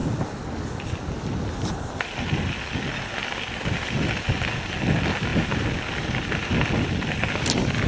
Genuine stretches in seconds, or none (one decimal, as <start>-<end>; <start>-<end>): 0.0-7.9